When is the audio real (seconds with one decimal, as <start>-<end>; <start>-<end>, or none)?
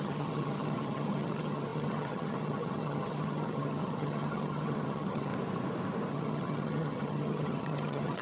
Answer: 5.3-6.1